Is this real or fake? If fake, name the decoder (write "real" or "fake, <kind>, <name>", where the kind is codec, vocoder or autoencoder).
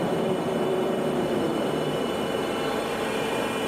fake, vocoder, BigVGAN v2